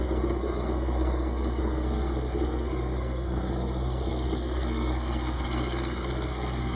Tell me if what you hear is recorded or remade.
remade